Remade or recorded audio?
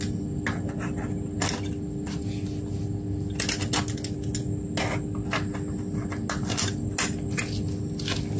recorded